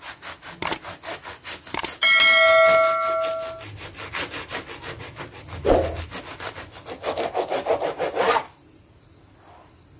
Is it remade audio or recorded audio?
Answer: recorded